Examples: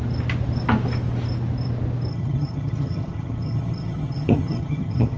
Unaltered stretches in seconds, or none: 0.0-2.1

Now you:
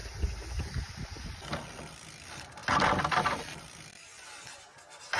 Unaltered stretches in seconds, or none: 0.0-5.2

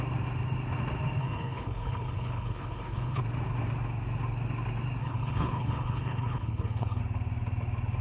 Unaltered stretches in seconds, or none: 0.0-1.2; 3.2-5.0; 7.0-8.0

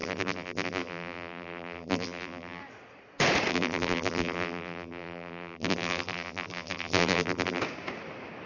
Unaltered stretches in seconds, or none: 2.6-3.5; 7.6-8.5

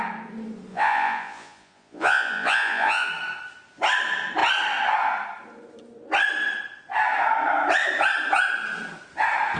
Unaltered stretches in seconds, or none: 0.0-0.7; 3.1-9.6

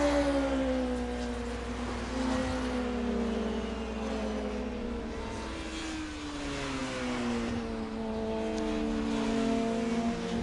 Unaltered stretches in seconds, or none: 0.0-10.4

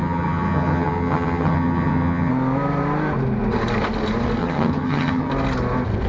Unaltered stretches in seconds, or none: 2.3-4.4; 5.3-6.1

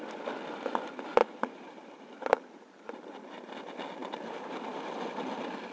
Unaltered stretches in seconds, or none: 0.0-1.2; 3.5-4.0; 4.9-5.7